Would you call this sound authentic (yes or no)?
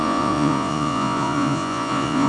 no